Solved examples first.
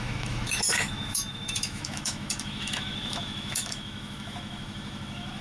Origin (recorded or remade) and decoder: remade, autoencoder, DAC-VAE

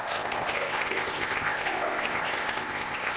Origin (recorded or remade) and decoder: remade, codec, ZipCodec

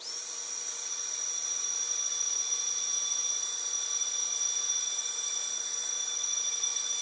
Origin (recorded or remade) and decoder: remade, vocoder, Vocos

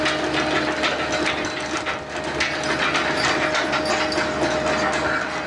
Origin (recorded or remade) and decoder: recorded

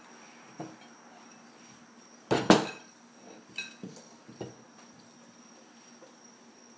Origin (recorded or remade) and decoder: recorded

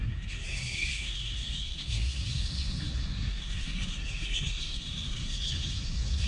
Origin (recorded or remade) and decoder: remade, codec, SNAC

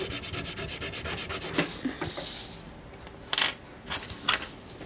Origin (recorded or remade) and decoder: recorded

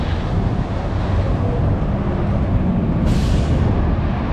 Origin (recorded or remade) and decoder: recorded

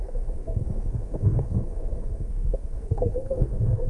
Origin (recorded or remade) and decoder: remade, codec, SNAC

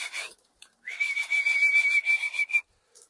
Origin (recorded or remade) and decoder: recorded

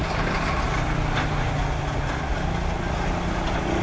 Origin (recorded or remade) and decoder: recorded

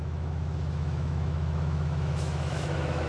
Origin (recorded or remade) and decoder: remade, autoencoder, DAC-VAE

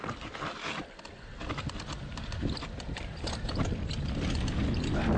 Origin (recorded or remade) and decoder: recorded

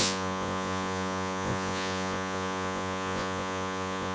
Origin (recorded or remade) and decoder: remade, vocoder, Vocos